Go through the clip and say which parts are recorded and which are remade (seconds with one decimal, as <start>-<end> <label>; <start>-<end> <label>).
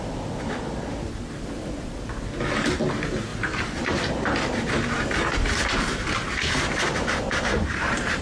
0.0-3.3 recorded; 3.3-3.9 remade; 3.9-5.6 recorded; 5.6-8.2 remade